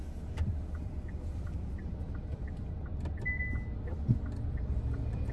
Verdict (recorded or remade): recorded